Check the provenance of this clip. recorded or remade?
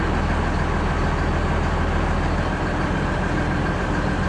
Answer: recorded